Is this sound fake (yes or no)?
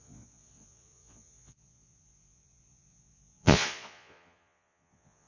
yes